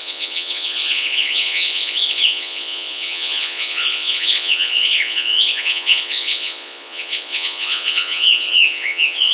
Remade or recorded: remade